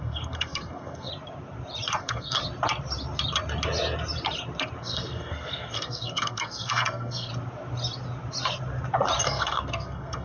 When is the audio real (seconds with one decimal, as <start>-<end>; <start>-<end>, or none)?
1.1-2.0; 2.4-4.8; 7.3-9.2